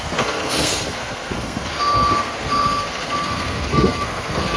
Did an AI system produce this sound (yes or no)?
yes